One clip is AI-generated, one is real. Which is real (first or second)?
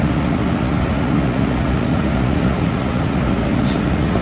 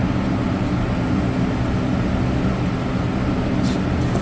second